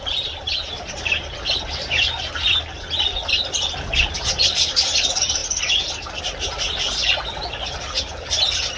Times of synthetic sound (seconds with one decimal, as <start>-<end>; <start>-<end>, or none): none